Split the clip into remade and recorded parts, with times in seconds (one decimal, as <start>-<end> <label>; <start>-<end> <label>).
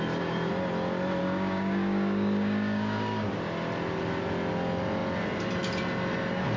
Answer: 0.0-1.2 recorded; 1.2-3.3 remade; 3.3-6.6 recorded